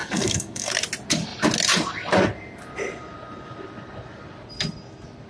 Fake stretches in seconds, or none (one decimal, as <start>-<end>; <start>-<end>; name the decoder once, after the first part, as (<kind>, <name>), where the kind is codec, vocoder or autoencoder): 0.0-0.7 (codec, SNAC)